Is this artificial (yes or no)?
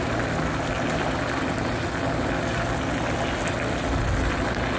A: no